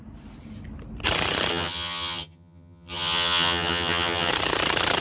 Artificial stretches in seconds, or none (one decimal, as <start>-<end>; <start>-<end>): 1.5-4.3